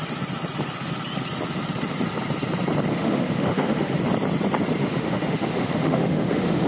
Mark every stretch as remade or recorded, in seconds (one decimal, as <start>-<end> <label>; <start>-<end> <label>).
0.0-2.9 recorded; 2.9-4.0 remade; 4.0-4.8 recorded; 4.8-6.7 remade